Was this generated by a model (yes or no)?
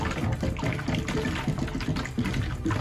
no